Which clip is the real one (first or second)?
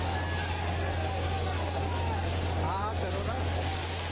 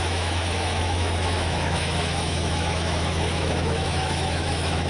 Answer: first